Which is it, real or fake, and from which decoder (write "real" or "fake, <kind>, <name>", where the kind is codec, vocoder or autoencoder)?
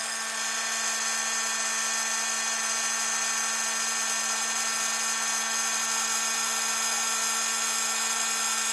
real